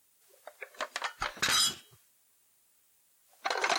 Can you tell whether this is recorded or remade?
recorded